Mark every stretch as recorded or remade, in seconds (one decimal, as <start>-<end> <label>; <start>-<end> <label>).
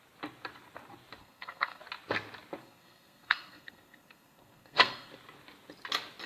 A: 0.0-1.2 recorded; 1.2-1.8 remade; 1.8-2.6 recorded; 2.6-5.1 remade; 5.1-6.3 recorded